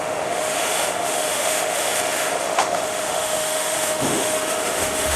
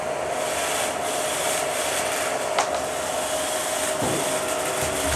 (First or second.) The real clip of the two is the second